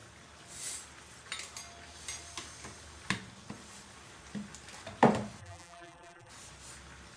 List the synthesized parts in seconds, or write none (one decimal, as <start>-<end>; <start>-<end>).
5.4-6.3